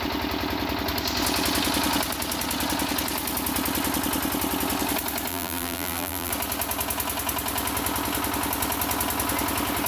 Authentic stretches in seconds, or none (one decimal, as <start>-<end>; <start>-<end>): 0.0-5.3; 6.3-9.9